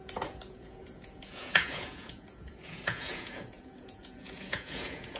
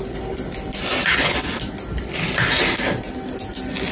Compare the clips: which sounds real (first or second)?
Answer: second